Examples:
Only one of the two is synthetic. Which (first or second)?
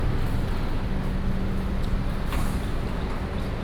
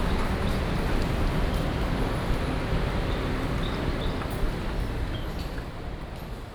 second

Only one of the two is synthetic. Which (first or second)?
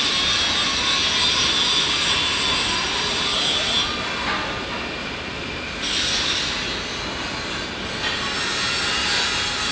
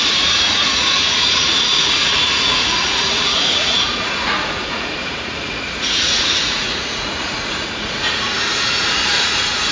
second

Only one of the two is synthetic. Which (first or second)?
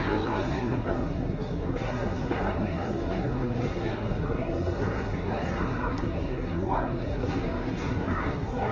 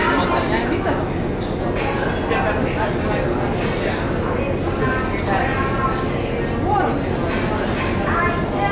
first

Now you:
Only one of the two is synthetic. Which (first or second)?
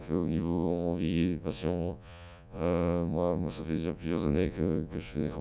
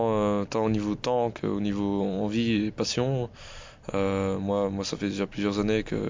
first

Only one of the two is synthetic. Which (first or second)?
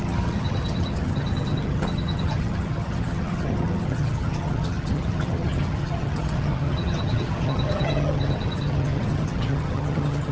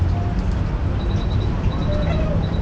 first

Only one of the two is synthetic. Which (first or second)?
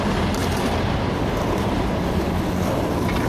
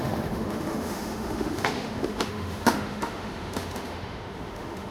second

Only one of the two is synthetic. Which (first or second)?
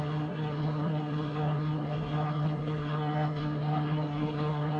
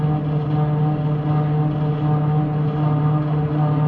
first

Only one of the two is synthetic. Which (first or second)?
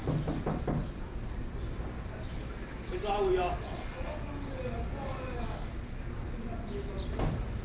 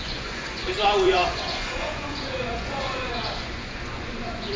second